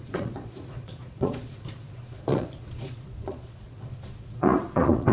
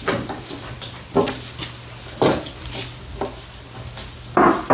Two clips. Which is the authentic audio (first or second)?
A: second